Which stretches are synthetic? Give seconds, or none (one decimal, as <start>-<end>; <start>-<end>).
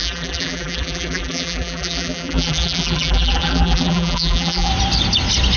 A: 0.0-4.7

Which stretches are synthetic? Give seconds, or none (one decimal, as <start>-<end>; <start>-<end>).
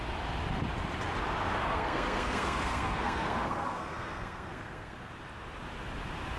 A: 1.7-5.1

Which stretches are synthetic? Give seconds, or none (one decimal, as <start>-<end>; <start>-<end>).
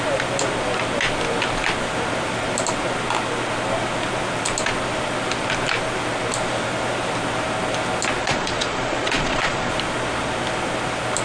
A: 8.2-9.7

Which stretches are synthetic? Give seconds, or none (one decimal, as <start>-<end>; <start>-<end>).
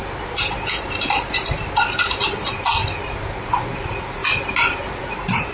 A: 3.3-4.2; 5.0-5.5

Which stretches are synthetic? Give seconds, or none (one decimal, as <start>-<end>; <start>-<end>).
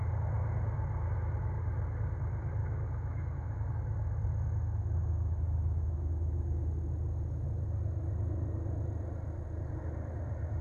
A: 2.6-3.7; 5.0-6.7